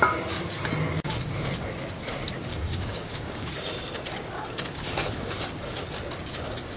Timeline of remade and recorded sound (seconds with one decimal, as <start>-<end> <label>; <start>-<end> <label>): 0.0-2.5 recorded; 2.5-3.5 remade; 3.5-6.8 recorded